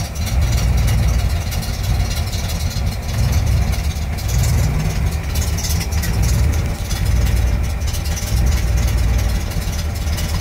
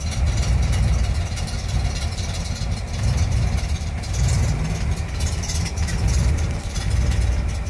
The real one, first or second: first